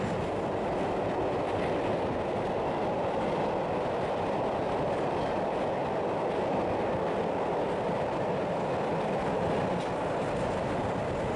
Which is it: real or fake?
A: real